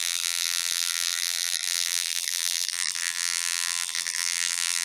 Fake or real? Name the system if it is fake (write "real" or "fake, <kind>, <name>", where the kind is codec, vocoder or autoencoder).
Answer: fake, vocoder, BigVGAN v2